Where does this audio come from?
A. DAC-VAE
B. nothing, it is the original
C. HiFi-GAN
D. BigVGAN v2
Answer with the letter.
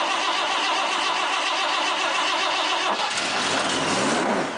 B